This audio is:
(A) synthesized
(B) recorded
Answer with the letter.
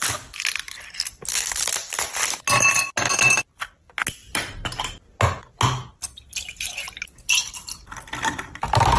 B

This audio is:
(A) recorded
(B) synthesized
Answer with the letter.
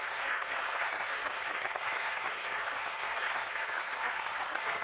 B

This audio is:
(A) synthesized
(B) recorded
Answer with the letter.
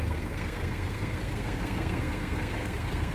A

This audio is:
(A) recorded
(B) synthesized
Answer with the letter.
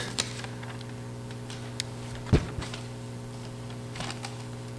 A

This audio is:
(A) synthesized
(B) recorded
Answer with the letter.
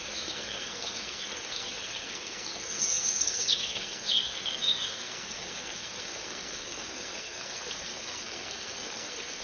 A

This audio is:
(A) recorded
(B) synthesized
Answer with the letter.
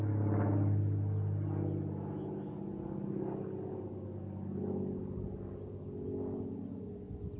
A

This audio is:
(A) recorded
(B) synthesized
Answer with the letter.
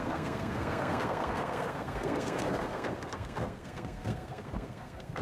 B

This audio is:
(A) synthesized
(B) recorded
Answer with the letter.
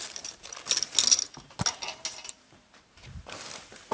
B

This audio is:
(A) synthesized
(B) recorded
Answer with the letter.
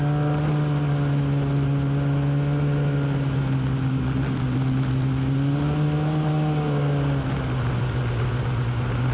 B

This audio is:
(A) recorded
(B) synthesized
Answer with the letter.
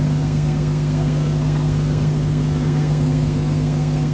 B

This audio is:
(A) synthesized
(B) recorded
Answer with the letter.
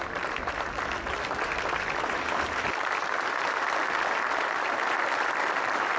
B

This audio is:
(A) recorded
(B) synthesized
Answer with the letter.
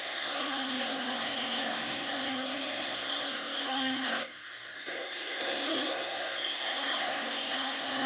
B